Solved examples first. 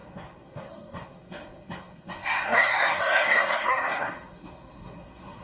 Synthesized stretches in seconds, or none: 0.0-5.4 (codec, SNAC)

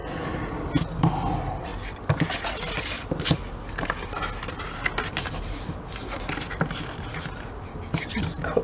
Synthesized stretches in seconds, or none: none

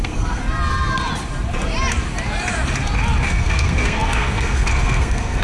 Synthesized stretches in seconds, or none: 0.0-0.4 (codec, SNAC); 3.3-5.4